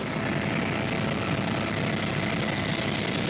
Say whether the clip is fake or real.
real